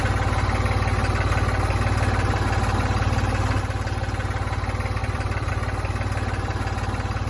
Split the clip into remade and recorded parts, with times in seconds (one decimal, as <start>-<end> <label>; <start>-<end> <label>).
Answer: 0.0-5.0 recorded; 5.0-5.5 remade; 5.5-7.3 recorded